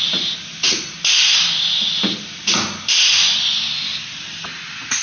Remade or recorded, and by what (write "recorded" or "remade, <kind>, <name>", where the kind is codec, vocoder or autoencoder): recorded